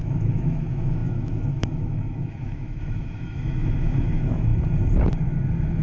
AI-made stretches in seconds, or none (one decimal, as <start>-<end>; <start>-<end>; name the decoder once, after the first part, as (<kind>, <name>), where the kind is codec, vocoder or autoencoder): 0.0-4.5 (autoencoder, DAC-VAE)